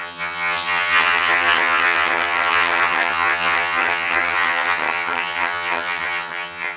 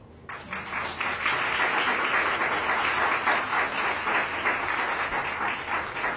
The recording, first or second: second